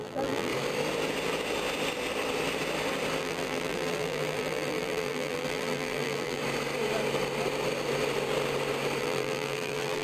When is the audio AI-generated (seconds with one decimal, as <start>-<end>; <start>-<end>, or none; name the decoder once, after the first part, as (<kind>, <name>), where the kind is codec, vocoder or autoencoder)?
0.0-0.5 (vocoder, BigVGAN v2); 3.2-6.4; 9.0-10.0